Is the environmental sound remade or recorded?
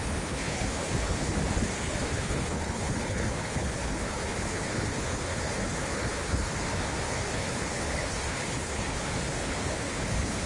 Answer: remade